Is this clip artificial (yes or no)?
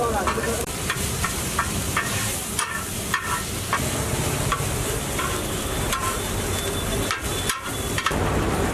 yes